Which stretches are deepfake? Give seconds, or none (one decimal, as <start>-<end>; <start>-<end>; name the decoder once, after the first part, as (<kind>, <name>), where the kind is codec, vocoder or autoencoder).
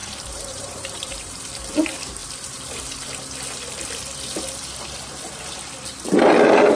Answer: 0.0-1.4 (vocoder, BigVGAN v2)